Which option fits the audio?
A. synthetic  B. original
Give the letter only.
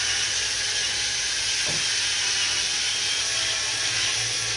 B